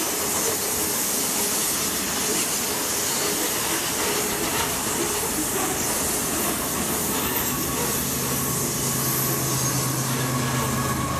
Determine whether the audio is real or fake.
real